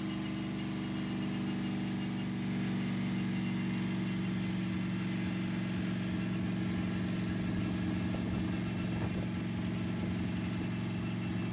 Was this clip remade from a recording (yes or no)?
no